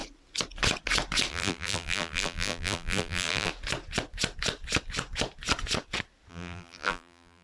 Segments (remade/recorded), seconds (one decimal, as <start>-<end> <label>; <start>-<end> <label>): 0.0-1.3 recorded; 1.3-3.5 remade; 3.5-6.3 recorded; 6.3-7.4 remade